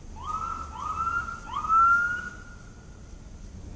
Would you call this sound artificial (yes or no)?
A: no